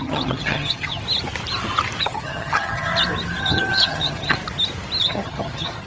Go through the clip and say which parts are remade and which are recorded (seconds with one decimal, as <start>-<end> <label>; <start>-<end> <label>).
0.0-1.0 remade; 1.0-2.0 recorded; 2.0-2.9 remade; 2.9-3.4 recorded; 3.4-4.4 remade; 4.4-5.0 recorded; 5.0-5.9 remade